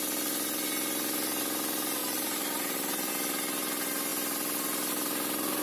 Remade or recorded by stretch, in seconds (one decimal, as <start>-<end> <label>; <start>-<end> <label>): 0.0-2.0 recorded; 2.0-3.1 remade; 3.1-5.6 recorded